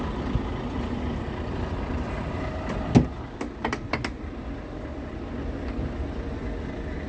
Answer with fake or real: real